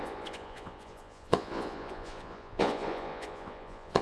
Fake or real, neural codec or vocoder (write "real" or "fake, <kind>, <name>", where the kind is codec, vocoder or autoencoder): fake, vocoder, Vocos